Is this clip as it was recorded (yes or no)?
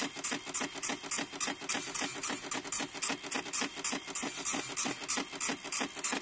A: yes